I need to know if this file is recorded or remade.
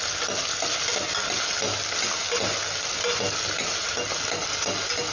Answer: recorded